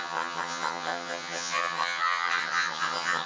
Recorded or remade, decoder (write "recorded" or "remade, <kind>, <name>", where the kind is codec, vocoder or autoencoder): remade, vocoder, HiFi-GAN